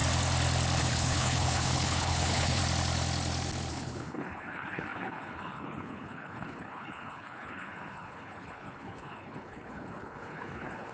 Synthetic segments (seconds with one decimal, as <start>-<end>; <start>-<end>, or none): 0.8-2.6; 3.7-10.9

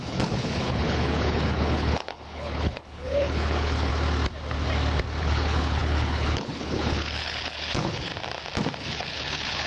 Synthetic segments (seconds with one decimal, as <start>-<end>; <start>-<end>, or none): 0.0-3.9; 5.2-8.1; 8.8-9.7

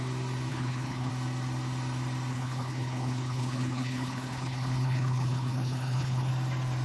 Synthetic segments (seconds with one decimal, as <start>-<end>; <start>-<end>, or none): 0.5-1.1; 2.3-6.3

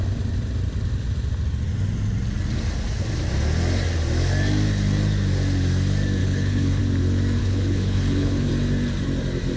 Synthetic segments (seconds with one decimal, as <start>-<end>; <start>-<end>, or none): 6.2-6.8; 7.4-8.5